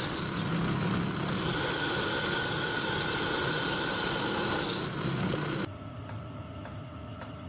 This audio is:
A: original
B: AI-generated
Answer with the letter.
A